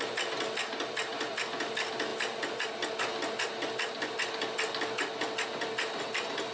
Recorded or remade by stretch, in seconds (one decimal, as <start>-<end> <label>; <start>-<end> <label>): 0.0-6.5 recorded